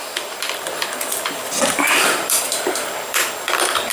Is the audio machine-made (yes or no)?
yes